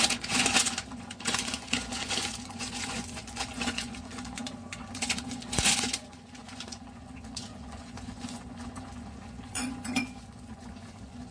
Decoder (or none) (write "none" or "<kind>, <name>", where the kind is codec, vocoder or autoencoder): vocoder, Vocos